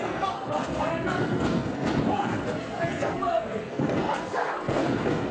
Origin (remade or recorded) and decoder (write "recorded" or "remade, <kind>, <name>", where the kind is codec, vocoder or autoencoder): remade, codec, SNAC